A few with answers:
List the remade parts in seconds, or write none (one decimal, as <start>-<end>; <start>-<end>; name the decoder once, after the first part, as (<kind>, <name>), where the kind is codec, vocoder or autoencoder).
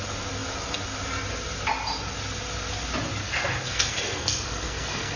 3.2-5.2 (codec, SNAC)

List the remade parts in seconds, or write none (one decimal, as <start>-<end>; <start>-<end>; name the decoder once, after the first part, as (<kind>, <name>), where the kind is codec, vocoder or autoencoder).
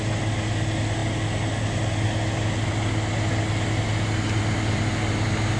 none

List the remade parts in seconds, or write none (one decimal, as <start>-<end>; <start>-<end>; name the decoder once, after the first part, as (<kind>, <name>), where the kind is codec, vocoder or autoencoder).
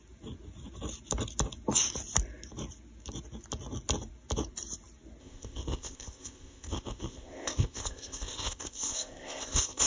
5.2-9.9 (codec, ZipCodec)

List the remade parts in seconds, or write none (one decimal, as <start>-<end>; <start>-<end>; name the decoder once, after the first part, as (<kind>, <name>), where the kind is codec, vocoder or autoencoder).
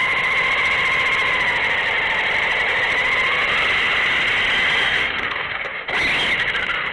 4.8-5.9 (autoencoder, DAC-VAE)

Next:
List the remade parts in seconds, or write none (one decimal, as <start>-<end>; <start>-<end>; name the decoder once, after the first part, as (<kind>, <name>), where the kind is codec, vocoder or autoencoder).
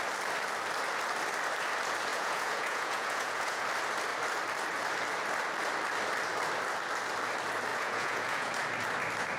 2.1-3.6 (vocoder, Vocos); 7.7-8.5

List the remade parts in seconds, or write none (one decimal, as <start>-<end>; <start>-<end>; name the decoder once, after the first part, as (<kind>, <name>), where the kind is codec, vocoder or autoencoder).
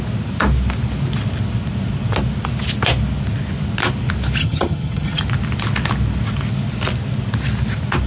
4.4-5.2 (vocoder, HiFi-GAN)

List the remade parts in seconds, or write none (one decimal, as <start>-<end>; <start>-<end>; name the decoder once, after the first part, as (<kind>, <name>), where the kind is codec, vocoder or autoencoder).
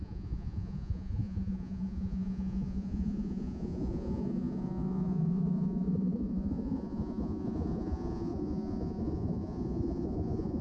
0.0-10.6 (vocoder, Vocos)